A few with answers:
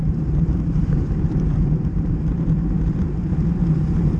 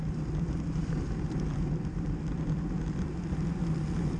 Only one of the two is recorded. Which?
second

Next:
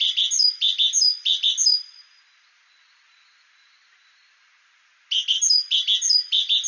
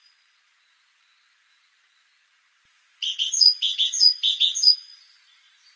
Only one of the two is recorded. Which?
first